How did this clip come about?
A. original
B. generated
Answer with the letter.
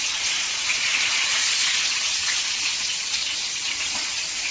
B